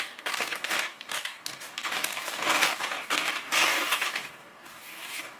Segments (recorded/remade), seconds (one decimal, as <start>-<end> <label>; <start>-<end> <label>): 0.0-5.4 remade